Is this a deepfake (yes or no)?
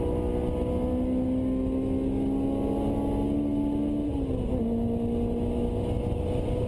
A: no